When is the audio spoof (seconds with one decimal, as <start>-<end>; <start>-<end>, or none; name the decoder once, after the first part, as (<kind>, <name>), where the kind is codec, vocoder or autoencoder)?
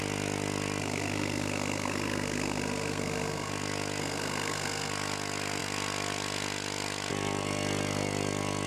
0.8-3.5 (codec, SNAC); 4.0-4.9